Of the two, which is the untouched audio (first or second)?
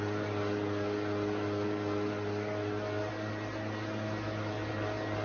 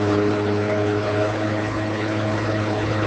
first